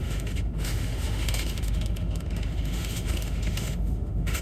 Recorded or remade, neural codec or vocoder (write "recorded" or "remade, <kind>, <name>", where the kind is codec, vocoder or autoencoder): remade, autoencoder, DAC-VAE